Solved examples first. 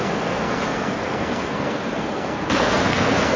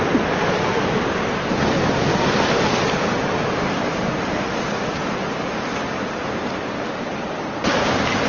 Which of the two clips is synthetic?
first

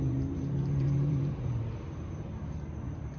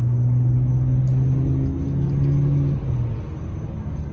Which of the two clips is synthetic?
first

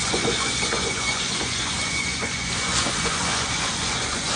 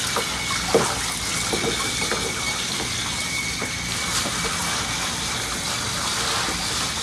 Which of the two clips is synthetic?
first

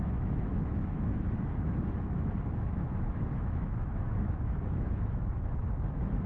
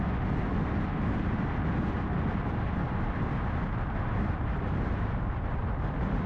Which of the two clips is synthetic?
first